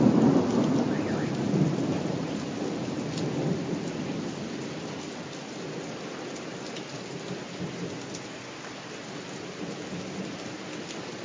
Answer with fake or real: real